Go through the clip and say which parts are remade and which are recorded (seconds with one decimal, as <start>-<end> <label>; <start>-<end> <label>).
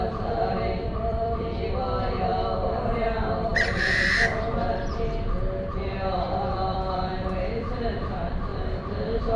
0.0-9.4 remade